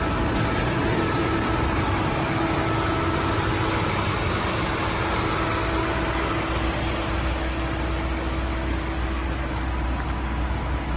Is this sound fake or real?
real